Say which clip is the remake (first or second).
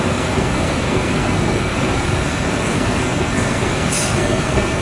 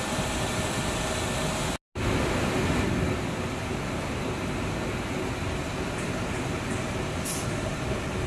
first